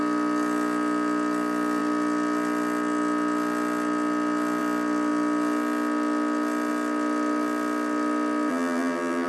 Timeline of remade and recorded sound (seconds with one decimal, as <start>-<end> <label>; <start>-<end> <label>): 0.0-8.5 recorded; 8.5-9.3 remade